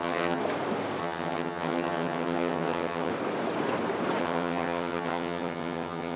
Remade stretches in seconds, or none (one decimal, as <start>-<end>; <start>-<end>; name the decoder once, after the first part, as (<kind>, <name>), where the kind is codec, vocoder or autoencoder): 0.0-0.4 (vocoder, HiFi-GAN); 1.0-3.1; 4.2-6.2